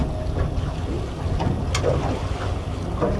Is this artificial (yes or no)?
no